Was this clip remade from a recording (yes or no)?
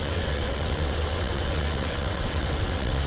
yes